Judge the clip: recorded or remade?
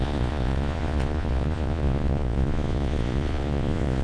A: remade